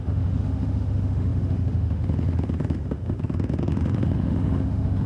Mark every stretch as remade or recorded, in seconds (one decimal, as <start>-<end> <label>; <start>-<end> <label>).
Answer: 0.0-5.1 remade